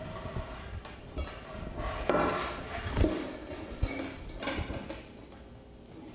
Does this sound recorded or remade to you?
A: recorded